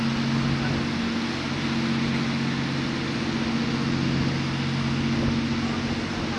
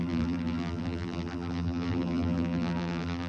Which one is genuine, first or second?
first